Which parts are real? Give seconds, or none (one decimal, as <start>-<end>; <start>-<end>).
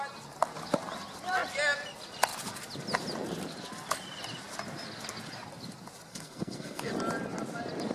0.0-6.1; 6.9-7.9